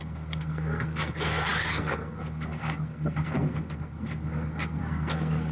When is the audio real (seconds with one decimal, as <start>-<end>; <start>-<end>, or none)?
none